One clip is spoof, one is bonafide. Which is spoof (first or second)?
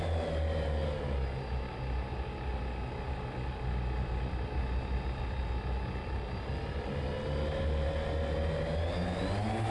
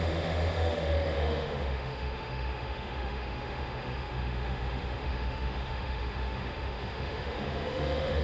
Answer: second